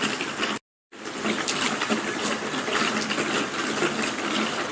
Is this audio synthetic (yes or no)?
no